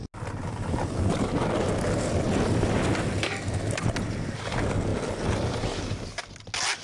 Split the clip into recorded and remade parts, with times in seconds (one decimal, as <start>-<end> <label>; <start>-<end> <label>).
0.0-6.8 recorded